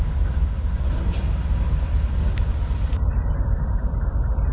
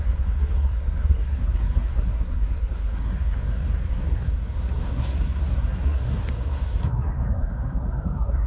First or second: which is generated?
second